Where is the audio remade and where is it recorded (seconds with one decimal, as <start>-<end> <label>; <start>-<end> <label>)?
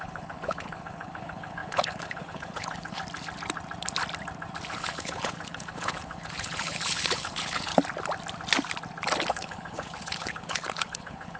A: 0.0-3.0 remade; 3.0-4.7 recorded; 4.7-7.7 remade; 7.7-9.3 recorded; 9.3-11.4 remade